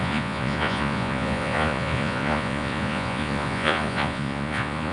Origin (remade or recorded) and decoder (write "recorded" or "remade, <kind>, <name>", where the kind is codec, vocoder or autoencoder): remade, vocoder, Vocos